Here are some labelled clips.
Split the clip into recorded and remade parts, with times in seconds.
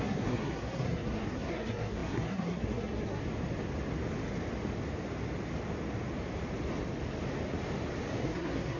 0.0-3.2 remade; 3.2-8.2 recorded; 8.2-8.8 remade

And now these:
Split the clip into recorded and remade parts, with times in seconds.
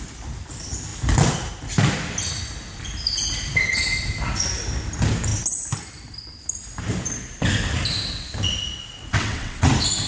0.0-9.1 recorded; 9.1-9.7 remade; 9.7-10.1 recorded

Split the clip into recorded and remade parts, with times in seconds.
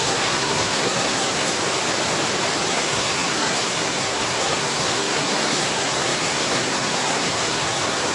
0.0-1.6 remade; 1.6-2.7 recorded; 2.7-8.1 remade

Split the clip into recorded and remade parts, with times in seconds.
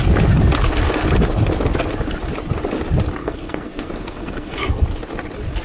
0.0-3.2 recorded; 3.2-4.7 remade; 4.7-5.6 recorded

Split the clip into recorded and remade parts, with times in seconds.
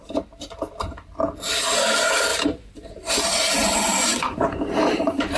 0.0-2.3 recorded; 2.3-5.4 remade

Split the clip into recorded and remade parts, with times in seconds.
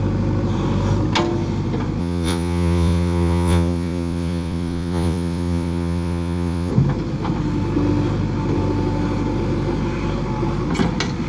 0.0-2.0 recorded; 2.0-6.7 remade; 6.7-11.3 recorded